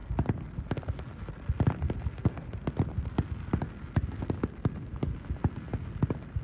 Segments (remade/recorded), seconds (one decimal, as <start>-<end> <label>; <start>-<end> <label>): 0.0-6.4 recorded